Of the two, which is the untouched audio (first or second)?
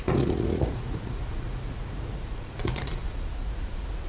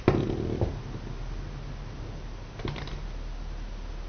second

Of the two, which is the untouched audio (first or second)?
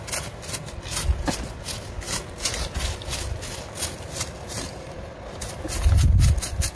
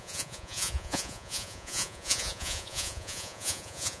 first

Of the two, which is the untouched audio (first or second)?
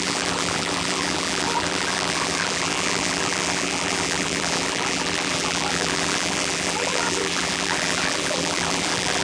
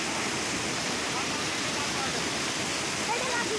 second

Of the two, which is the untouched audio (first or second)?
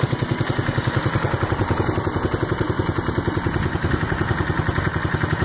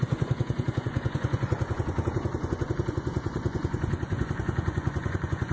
first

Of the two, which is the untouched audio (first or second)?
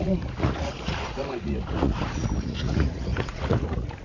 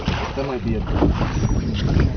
second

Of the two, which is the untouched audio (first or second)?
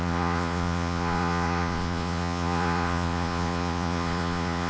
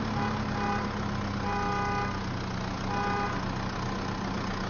second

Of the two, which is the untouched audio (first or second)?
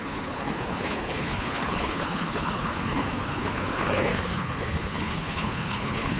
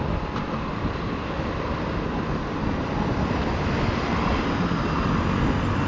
second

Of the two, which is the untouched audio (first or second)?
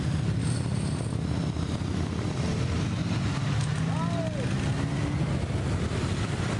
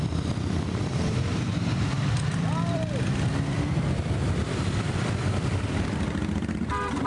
first